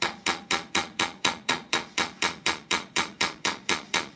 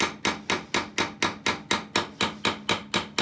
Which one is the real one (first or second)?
second